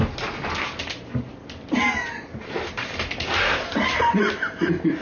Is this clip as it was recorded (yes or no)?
yes